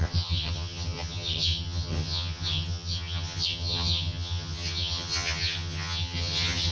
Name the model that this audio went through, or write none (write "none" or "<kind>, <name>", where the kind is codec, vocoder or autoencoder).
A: vocoder, HiFi-GAN